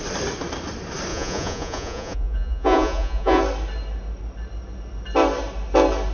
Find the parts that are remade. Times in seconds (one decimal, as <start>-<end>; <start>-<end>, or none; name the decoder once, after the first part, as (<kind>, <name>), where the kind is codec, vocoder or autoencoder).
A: 1.1-3.4 (vocoder, Vocos)